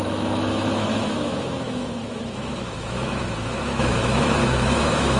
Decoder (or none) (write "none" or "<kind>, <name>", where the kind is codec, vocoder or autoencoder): autoencoder, DAC-VAE